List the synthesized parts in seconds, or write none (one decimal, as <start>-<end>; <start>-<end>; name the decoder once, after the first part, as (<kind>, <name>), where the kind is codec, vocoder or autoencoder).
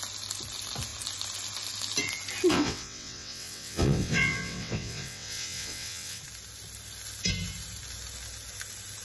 2.5-6.2 (vocoder, WaveNeXt)